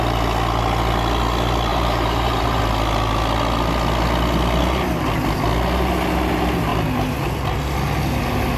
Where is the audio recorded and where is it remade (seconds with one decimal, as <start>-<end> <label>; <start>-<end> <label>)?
0.0-1.7 recorded; 1.7-2.6 remade; 2.6-8.6 recorded